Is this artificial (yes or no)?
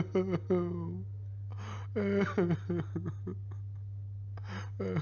no